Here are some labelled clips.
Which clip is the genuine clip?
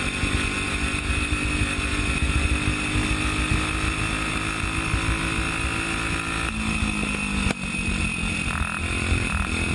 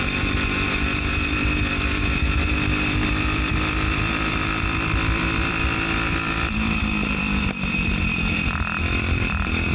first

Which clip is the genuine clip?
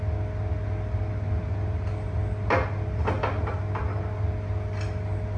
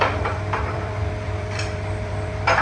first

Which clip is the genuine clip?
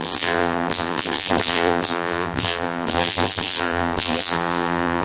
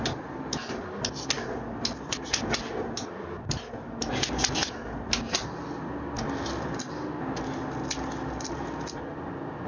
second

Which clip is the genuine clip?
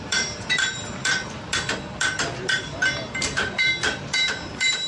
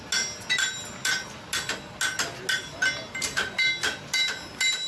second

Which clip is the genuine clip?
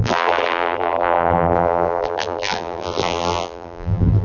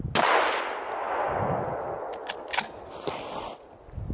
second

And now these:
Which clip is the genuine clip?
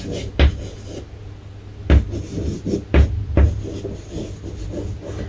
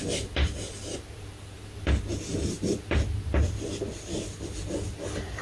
first